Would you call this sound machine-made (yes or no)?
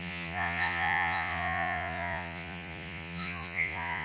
yes